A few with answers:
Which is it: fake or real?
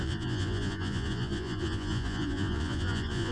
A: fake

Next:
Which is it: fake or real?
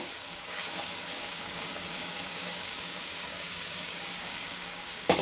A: fake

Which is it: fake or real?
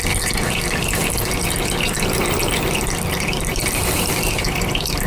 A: fake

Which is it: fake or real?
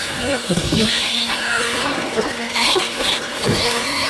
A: fake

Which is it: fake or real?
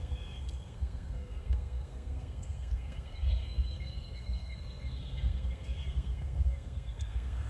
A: fake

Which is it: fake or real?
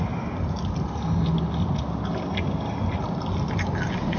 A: real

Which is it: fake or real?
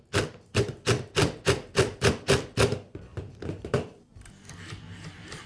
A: fake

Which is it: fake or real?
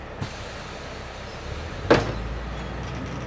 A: real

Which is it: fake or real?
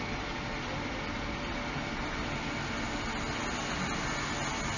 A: real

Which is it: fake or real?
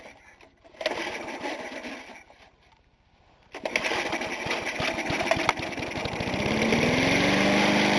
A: real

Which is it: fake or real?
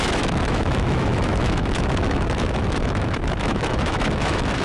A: fake